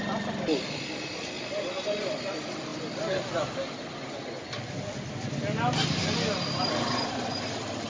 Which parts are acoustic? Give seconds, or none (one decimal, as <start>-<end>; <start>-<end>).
0.0-7.9